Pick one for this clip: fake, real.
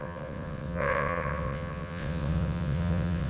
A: fake